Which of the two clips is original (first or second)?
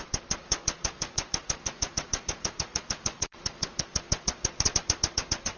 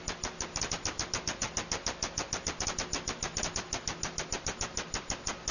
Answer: second